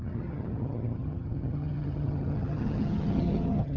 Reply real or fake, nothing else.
fake